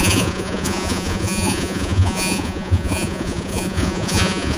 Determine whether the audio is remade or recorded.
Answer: remade